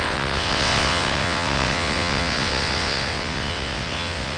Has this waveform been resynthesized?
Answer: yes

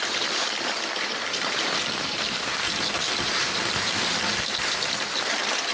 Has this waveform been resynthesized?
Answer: no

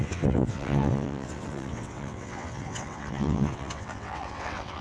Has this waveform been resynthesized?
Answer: yes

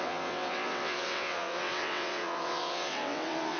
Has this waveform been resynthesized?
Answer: yes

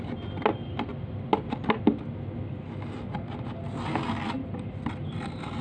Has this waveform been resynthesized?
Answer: no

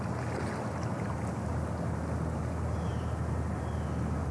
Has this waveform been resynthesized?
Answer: no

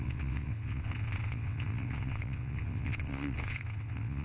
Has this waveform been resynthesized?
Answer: yes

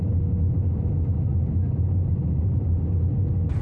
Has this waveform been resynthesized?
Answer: no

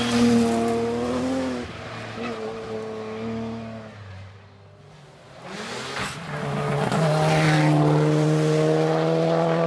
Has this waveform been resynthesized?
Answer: no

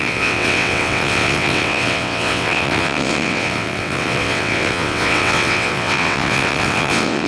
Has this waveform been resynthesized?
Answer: yes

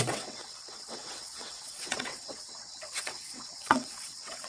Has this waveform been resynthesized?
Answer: yes